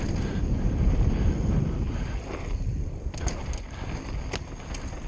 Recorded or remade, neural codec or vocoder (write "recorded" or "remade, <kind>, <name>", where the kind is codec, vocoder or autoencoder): recorded